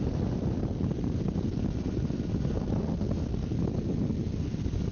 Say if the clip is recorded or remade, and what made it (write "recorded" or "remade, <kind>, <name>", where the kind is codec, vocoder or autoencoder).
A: recorded